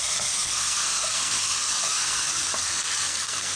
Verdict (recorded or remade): remade